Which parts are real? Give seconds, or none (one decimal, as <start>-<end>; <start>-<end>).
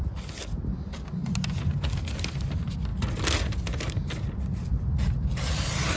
0.0-6.0